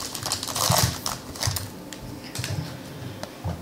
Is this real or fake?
real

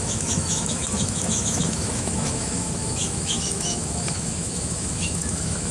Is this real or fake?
fake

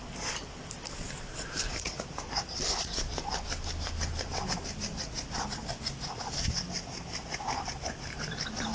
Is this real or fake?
real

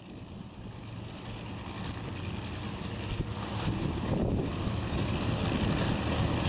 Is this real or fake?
real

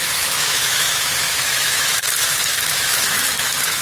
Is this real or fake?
fake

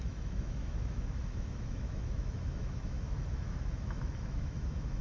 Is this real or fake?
fake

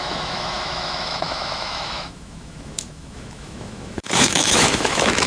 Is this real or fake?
fake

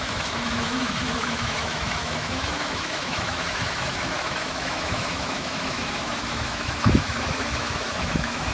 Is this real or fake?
fake